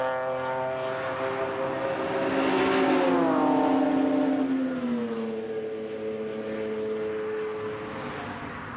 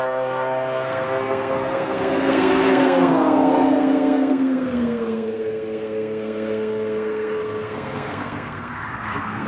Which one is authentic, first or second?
first